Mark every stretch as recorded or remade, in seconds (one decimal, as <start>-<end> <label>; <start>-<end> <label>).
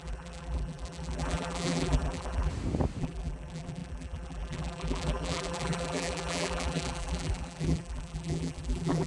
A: 0.0-2.5 remade; 2.5-3.0 recorded; 3.0-9.1 remade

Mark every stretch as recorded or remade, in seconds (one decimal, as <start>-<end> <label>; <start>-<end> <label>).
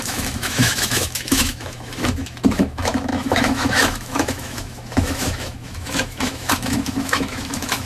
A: 0.0-7.9 remade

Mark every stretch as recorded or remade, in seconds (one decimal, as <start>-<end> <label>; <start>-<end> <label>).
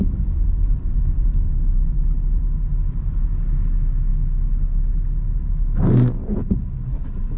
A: 0.0-7.4 recorded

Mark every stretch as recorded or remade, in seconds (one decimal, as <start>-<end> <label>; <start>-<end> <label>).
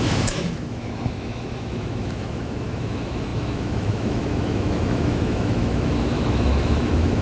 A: 0.0-7.2 remade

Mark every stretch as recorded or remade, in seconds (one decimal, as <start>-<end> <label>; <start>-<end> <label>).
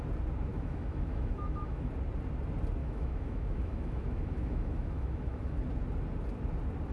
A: 0.0-0.5 recorded; 0.5-1.9 remade; 1.9-2.8 recorded; 2.8-5.6 remade; 5.6-6.9 recorded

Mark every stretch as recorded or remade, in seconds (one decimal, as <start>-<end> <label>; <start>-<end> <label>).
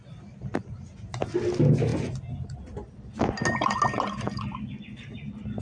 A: 0.0-5.6 recorded